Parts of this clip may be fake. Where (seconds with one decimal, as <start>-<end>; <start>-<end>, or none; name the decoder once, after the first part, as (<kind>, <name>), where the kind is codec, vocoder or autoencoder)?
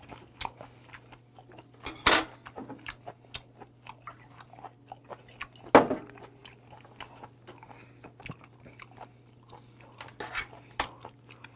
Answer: none